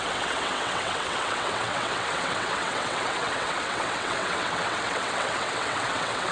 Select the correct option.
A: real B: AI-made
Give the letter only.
B